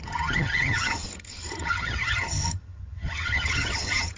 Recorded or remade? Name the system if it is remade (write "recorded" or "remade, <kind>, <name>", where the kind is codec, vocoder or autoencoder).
remade, vocoder, HiFi-GAN